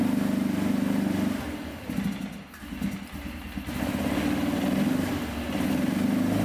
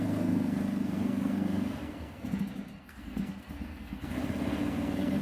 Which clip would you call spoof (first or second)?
second